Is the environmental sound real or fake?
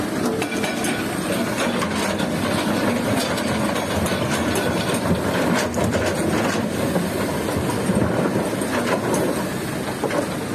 real